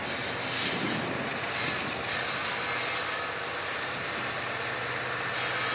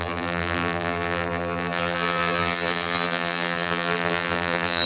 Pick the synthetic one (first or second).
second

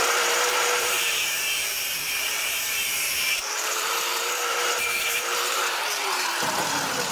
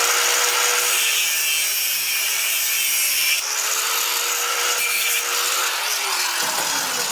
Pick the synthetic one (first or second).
first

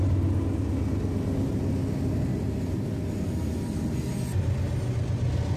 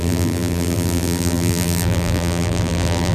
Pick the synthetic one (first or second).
second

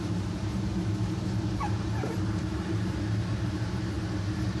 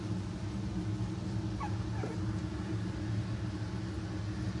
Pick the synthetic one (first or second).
first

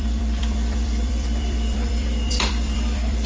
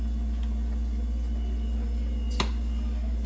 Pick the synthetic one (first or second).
first